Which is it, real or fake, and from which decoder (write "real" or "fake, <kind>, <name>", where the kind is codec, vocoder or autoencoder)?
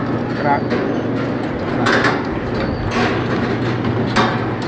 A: real